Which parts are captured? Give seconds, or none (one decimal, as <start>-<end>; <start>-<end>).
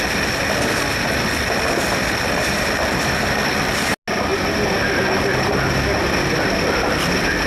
0.0-7.5